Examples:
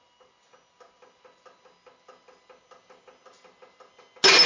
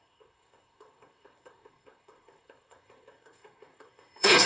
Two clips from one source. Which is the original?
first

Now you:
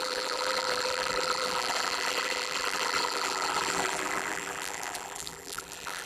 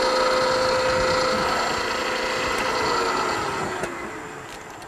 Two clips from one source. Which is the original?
second